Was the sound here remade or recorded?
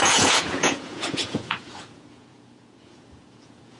remade